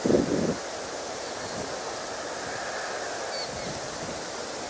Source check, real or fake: real